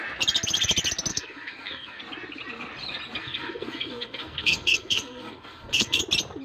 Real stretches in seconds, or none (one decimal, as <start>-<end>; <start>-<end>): 0.0-1.1; 2.0-3.2; 6.0-6.4